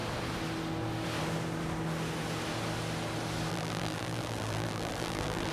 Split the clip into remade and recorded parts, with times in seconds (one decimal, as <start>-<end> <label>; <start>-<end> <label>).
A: 0.0-3.5 recorded; 3.5-5.5 remade